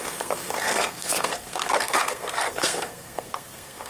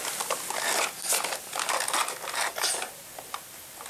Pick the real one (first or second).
second